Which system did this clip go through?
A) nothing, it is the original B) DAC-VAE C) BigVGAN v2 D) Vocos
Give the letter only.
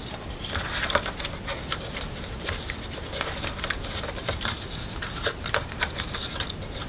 A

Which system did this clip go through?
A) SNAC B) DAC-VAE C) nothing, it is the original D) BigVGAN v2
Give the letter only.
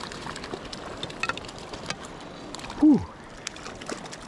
C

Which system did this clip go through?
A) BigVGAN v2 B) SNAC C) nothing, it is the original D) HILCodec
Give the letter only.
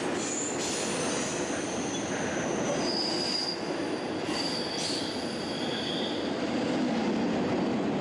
C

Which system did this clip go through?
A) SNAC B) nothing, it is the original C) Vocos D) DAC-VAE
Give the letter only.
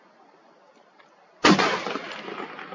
B